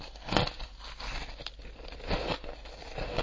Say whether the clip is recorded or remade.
recorded